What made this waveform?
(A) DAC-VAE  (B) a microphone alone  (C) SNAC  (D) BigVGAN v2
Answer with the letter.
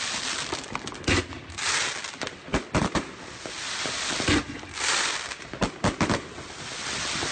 B